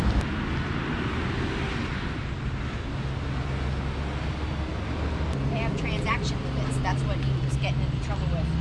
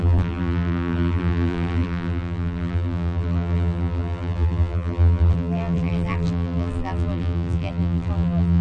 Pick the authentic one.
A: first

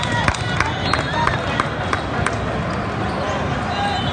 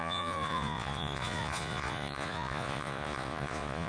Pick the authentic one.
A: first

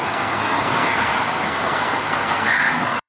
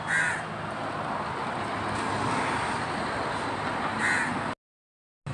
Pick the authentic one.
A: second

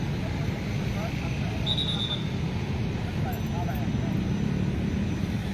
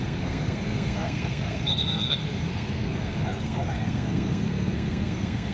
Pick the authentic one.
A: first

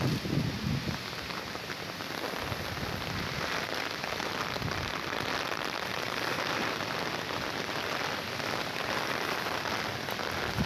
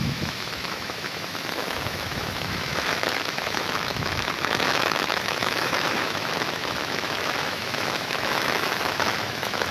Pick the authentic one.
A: first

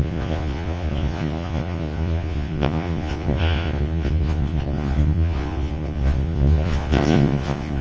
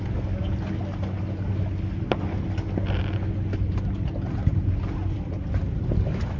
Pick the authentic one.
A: second